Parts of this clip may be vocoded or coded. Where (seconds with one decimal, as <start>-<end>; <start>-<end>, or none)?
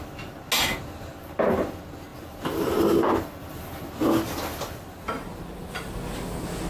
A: none